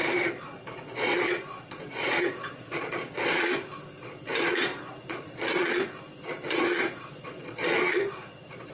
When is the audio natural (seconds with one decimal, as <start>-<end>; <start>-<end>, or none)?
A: none